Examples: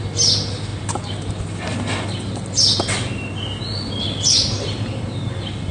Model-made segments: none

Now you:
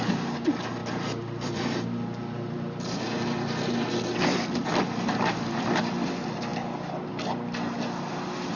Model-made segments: 0.8-5.8 (vocoder, BigVGAN v2)

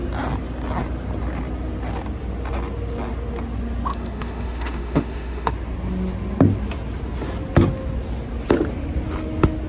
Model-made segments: 3.9-5.5 (autoencoder, DAC-VAE)

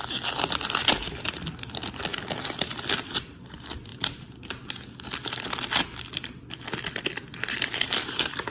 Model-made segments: none

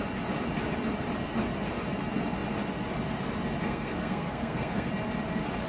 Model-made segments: 3.6-4.9 (codec, SNAC)